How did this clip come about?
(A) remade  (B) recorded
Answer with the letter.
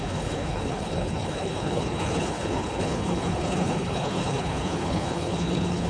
A